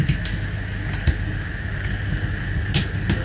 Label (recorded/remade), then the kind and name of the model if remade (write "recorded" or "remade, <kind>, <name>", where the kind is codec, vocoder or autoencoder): recorded